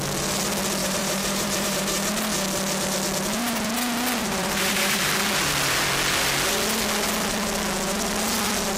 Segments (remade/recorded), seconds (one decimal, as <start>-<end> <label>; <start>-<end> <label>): 0.0-0.8 recorded; 0.8-2.1 remade; 2.1-4.2 recorded; 4.2-5.0 remade; 5.0-8.8 recorded